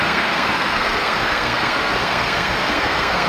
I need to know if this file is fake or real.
fake